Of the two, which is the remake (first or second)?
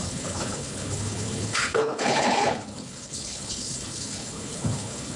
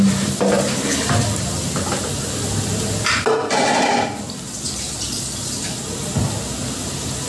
first